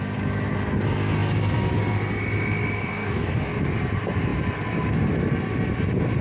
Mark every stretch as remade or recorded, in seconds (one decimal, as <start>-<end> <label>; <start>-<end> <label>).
0.0-2.8 recorded; 2.8-3.6 remade; 3.6-6.2 recorded

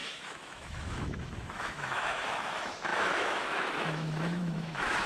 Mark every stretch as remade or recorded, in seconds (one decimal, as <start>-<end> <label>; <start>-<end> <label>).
0.0-5.1 remade